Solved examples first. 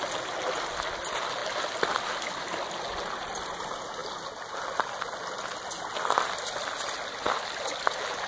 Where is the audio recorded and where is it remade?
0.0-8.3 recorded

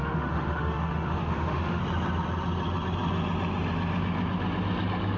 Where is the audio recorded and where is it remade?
0.0-1.8 remade; 1.8-5.2 recorded

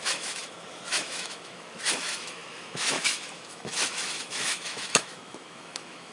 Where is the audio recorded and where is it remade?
0.0-6.1 remade

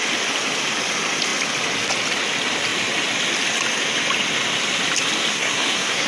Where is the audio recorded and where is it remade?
0.0-5.3 recorded; 5.3-6.1 remade

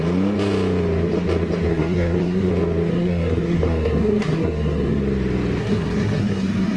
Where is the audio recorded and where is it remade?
0.0-1.7 recorded; 1.7-2.5 remade; 2.5-2.9 recorded; 2.9-5.0 remade; 5.0-5.6 recorded; 5.6-6.8 remade

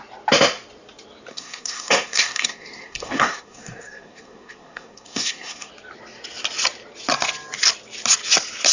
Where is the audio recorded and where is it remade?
0.0-1.3 recorded; 1.3-5.7 remade; 5.7-8.7 recorded